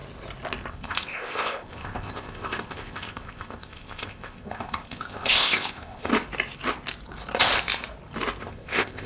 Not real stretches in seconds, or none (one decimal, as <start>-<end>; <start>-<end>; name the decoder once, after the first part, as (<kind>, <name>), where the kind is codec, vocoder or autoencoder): 0.7-6.1 (codec, ZipCodec); 8.4-9.1